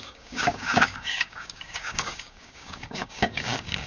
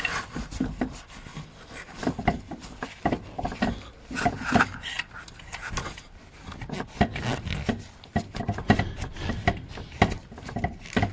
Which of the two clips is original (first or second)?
second